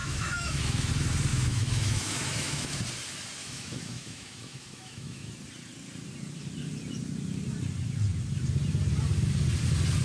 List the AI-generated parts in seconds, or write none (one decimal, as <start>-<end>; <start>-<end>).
0.0-0.9; 1.3-2.8; 3.4-5.3